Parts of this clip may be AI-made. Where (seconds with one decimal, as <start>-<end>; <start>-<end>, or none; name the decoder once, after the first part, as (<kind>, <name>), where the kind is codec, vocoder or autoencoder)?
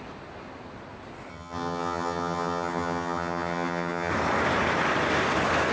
1.3-4.1 (vocoder, HiFi-GAN)